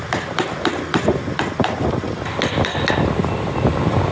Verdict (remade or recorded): recorded